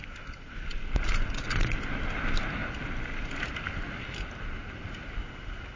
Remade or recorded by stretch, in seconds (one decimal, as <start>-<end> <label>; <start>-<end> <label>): 0.0-5.8 recorded